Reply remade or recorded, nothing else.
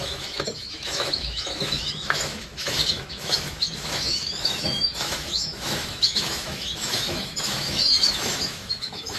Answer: remade